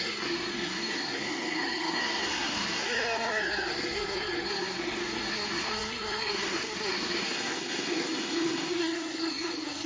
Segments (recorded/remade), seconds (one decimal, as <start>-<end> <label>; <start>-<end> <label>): 0.0-9.9 remade